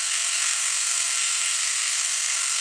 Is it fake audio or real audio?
fake